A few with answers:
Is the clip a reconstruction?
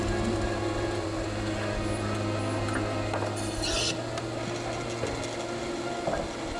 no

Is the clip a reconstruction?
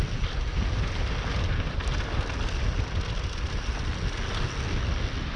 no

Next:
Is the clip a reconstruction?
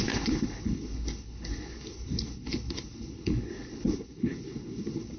yes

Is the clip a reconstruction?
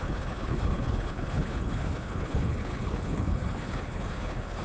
yes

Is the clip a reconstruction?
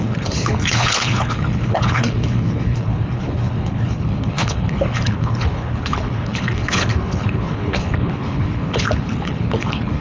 yes